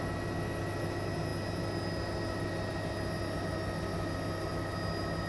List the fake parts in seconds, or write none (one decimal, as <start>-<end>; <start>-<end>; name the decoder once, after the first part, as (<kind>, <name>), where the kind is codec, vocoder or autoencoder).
none